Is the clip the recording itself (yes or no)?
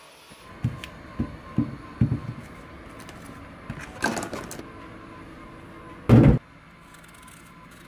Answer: yes